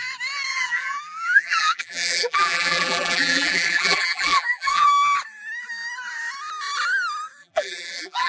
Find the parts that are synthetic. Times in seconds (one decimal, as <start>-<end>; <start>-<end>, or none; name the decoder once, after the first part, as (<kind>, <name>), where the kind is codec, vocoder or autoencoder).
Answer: 0.5-4.9 (vocoder, BigVGAN v2); 7.4-8.3